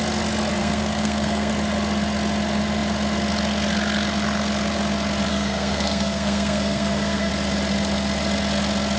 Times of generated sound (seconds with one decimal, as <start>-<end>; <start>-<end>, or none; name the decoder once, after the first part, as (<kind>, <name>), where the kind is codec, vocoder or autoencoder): 0.6-1.5 (codec, SNAC); 5.3-7.3